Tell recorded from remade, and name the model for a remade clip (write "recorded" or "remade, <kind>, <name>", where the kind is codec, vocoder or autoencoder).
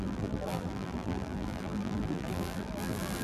remade, vocoder, BigVGAN v2